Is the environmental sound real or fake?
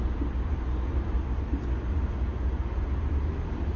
real